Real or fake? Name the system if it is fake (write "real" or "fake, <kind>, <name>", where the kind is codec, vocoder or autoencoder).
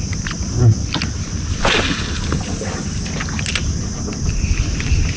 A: real